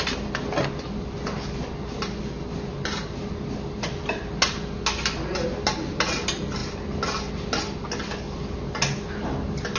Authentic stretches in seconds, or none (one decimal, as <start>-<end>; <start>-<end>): 0.0-9.8